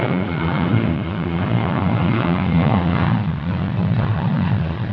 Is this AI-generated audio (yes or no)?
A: yes